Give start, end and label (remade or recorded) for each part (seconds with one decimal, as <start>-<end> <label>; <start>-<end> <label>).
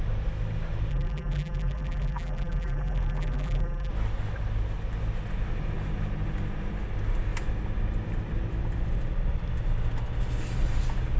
0.0-0.9 recorded; 0.9-3.9 remade; 3.9-11.2 recorded